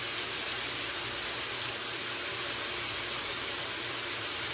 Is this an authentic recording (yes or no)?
no